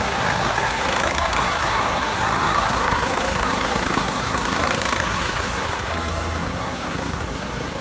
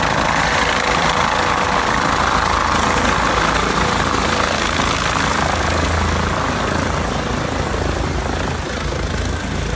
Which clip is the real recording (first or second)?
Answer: second